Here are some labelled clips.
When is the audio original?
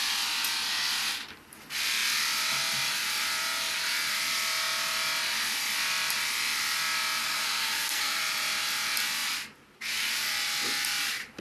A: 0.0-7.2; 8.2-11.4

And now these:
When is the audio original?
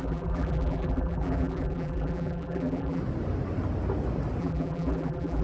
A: 3.0-4.4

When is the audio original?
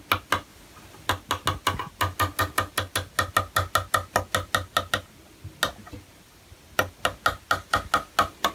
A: 0.0-8.5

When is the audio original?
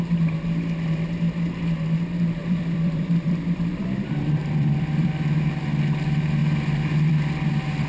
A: 0.0-2.4; 5.4-7.9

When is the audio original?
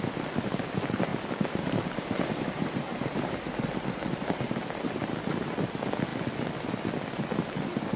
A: 0.0-1.1; 5.0-8.0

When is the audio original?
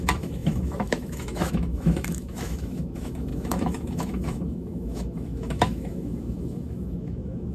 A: none